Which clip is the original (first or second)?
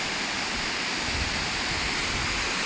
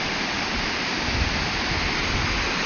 first